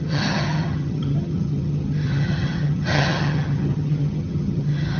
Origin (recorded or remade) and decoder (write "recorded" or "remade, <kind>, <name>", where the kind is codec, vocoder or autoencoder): remade, vocoder, HiFi-GAN